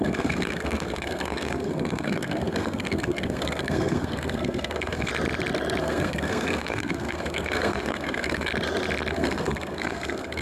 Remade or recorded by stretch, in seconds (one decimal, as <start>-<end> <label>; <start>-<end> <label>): 0.0-5.1 remade; 5.1-5.8 recorded; 5.8-8.5 remade; 8.5-9.1 recorded; 9.1-10.4 remade